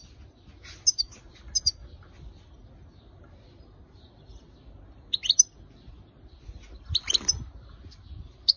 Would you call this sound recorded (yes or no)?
yes